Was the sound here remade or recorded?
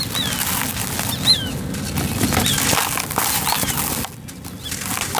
recorded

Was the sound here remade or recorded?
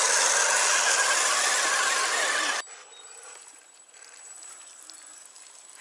recorded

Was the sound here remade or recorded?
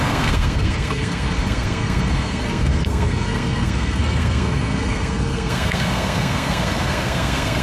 remade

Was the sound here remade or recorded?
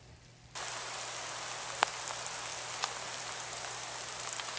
recorded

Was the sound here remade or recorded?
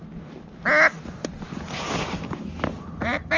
recorded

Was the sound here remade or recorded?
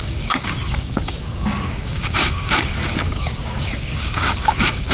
remade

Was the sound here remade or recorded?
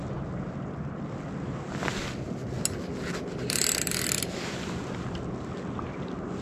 recorded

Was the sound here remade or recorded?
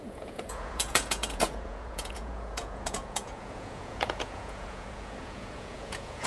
remade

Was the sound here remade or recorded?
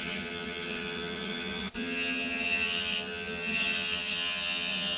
remade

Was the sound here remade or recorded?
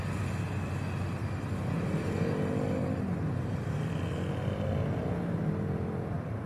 recorded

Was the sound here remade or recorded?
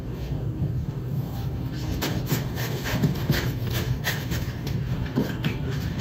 remade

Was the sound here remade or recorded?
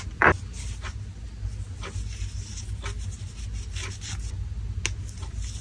recorded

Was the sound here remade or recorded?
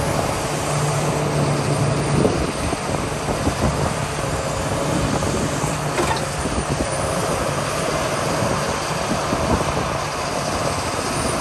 recorded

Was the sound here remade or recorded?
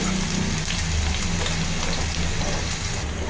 recorded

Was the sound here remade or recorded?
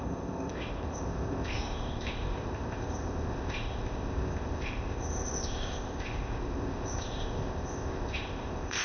remade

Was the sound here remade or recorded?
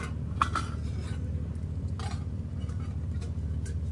recorded